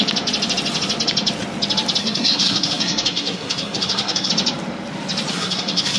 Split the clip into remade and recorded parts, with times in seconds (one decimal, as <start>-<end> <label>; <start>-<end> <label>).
0.0-2.0 recorded; 2.0-4.3 remade; 4.3-5.3 recorded; 5.3-6.0 remade